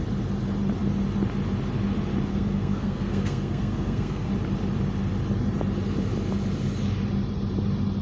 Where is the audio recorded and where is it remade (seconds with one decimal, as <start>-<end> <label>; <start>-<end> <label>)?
0.0-2.3 recorded; 2.3-4.3 remade; 4.3-8.0 recorded